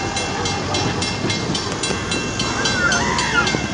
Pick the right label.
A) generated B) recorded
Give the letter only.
B